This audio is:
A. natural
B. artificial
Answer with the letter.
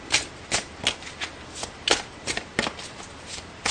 A